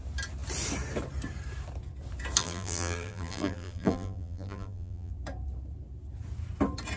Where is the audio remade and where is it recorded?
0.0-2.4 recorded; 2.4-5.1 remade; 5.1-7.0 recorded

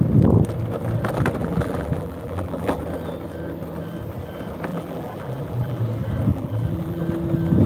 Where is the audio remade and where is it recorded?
0.0-1.4 recorded; 1.4-2.8 remade; 2.8-4.7 recorded; 4.7-5.8 remade; 5.8-6.3 recorded; 6.3-7.0 remade; 7.0-7.7 recorded

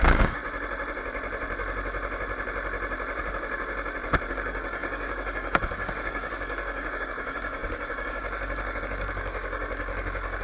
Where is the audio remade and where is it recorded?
0.0-0.4 remade; 0.4-4.3 recorded; 4.3-10.4 remade

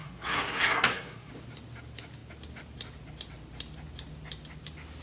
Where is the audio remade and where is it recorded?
0.0-1.3 remade; 1.3-5.0 recorded

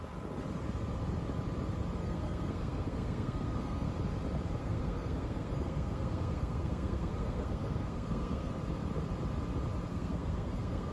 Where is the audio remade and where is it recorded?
0.0-2.0 recorded; 2.0-3.9 remade; 3.9-4.6 recorded; 4.6-8.5 remade; 8.5-9.9 recorded; 9.9-10.9 remade

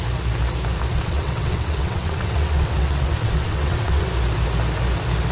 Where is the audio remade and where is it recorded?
0.0-0.9 recorded; 0.9-4.1 remade; 4.1-5.3 recorded

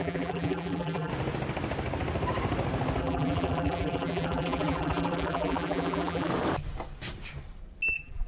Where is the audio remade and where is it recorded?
0.0-1.1 remade; 1.1-3.0 recorded; 3.0-6.3 remade; 6.3-7.9 recorded; 7.9-8.3 remade